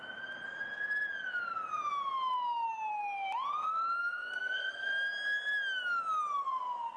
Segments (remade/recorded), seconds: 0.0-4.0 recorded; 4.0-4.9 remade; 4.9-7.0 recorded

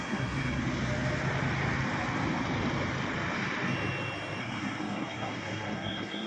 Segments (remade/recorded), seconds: 0.0-0.6 remade; 0.6-4.4 recorded; 4.4-6.3 remade